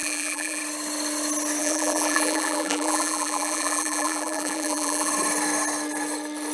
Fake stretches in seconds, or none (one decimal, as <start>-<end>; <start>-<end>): 0.0-0.6; 1.6-5.1